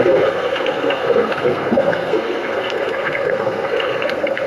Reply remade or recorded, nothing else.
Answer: remade